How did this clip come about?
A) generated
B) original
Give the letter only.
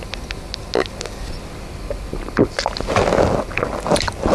B